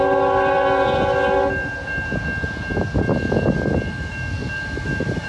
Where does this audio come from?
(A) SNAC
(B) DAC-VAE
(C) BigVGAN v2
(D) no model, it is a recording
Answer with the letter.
D